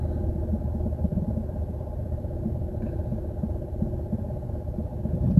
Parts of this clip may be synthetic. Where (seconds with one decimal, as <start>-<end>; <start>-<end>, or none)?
none